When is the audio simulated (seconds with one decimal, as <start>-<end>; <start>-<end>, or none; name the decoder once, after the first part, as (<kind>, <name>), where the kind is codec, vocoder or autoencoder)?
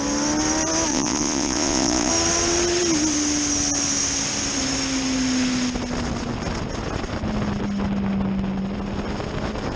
0.9-2.1 (vocoder, Vocos)